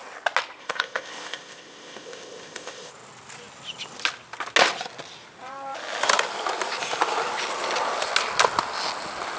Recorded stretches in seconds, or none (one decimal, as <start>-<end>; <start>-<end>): 0.0-0.6; 2.9-9.4